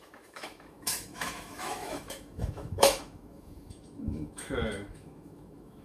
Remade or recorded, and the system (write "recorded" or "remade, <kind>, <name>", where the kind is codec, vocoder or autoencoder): remade, autoencoder, DAC-VAE